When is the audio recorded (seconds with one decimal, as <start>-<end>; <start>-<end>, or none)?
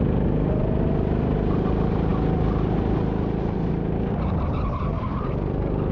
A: 0.0-5.9